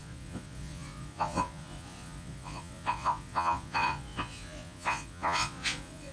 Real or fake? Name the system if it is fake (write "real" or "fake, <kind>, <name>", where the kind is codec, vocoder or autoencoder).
fake, vocoder, Vocos